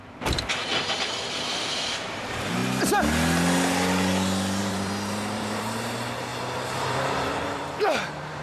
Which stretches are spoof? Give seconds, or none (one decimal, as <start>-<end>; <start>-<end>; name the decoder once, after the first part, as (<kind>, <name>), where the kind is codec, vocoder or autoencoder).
0.0-0.7 (vocoder, BigVGAN v2); 1.3-2.6; 4.6-6.3; 6.9-8.4